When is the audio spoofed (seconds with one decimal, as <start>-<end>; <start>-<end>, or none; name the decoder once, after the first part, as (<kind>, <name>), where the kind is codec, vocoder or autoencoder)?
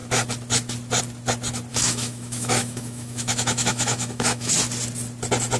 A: 1.7-4.5 (autoencoder, DAC-VAE)